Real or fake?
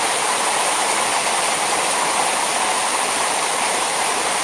real